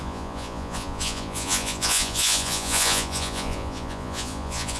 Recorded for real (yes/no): no